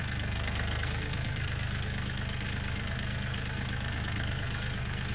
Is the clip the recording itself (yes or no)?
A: no